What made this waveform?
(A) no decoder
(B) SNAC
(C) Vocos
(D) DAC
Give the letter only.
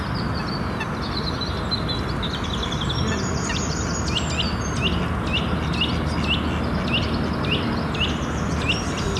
A